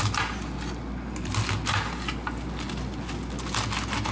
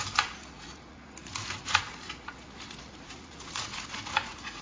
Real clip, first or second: first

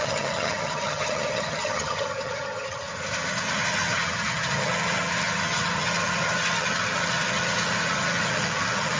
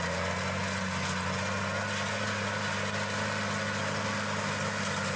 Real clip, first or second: second